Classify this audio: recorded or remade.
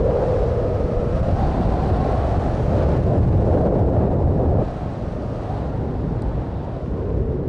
recorded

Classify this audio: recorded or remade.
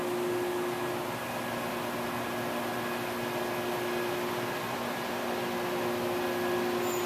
recorded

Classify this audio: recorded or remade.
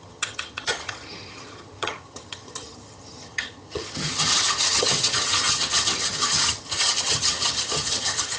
remade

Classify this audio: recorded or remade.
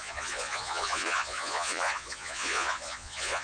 remade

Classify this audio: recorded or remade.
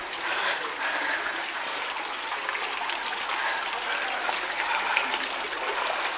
recorded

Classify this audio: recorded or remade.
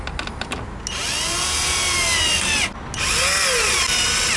recorded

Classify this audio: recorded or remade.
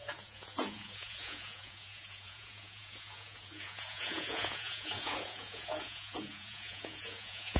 remade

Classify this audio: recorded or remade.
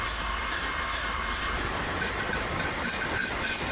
recorded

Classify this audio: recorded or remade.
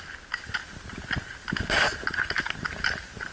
recorded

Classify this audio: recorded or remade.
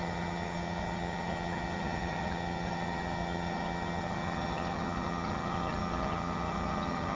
remade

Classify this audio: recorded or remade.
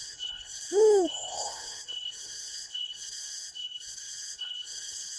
remade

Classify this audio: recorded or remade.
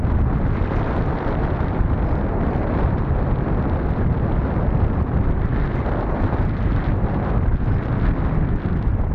remade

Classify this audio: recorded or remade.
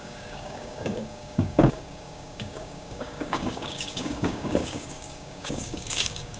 remade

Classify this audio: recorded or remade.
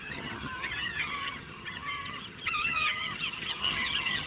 remade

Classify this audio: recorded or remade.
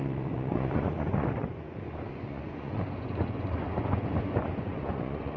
remade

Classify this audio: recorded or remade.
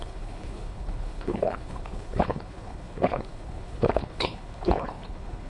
remade